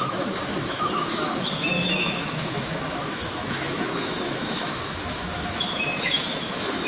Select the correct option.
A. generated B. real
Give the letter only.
A